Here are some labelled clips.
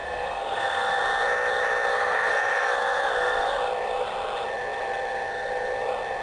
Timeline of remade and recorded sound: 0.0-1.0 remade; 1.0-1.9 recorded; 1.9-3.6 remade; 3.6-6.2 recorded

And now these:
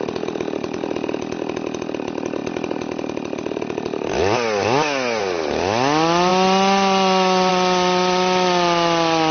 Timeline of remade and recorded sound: 0.0-9.3 recorded

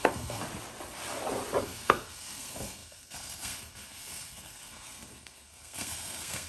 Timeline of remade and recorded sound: 0.0-0.4 remade; 0.4-1.6 recorded; 1.6-6.5 remade

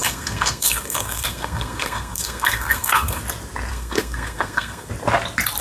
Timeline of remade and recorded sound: 0.0-3.2 remade; 3.2-3.7 recorded; 3.7-4.9 remade; 4.9-5.6 recorded

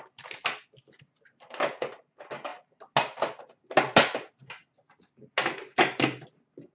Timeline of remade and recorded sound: 0.0-6.7 recorded

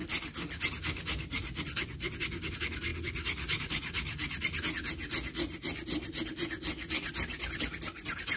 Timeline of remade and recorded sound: 0.0-8.4 recorded

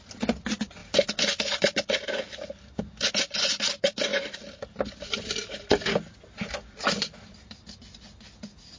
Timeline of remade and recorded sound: 0.0-8.8 recorded